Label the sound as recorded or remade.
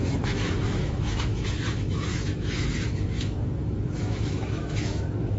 remade